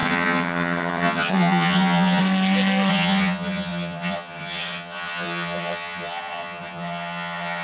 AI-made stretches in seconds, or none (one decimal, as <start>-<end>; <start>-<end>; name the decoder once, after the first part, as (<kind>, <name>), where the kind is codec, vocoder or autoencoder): 0.0-2.2 (vocoder, HiFi-GAN); 2.9-7.6